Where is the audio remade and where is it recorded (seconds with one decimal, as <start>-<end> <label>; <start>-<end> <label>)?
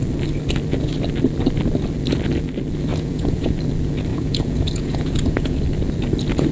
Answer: 0.0-2.9 recorded; 2.9-3.5 remade; 3.5-4.1 recorded; 4.1-5.6 remade; 5.6-6.5 recorded